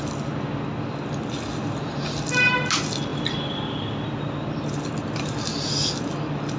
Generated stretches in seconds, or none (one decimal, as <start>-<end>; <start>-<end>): none